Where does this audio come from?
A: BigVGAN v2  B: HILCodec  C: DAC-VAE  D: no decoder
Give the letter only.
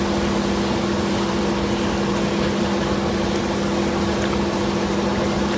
D